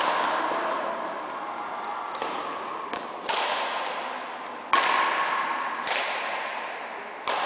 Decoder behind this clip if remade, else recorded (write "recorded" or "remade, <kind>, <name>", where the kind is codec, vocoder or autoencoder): recorded